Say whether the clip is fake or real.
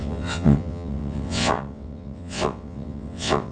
fake